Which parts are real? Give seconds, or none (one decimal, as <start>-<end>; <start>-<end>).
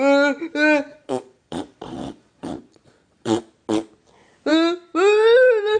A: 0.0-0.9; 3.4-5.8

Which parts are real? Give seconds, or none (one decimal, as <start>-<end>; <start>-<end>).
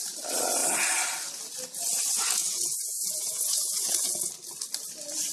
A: 0.0-2.4; 4.3-5.3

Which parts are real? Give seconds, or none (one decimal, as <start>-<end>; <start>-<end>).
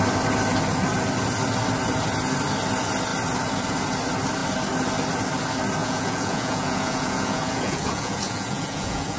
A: 0.0-5.8